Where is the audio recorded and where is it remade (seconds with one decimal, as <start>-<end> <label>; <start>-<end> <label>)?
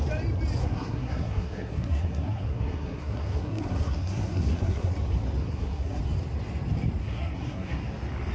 0.0-0.6 recorded; 0.6-4.9 remade; 4.9-5.4 recorded; 5.4-6.0 remade; 6.0-7.0 recorded; 7.0-7.8 remade; 7.8-8.3 recorded